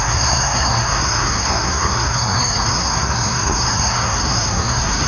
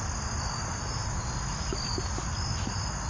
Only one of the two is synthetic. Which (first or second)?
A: first